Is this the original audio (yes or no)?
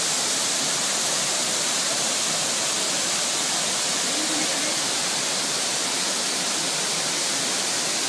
yes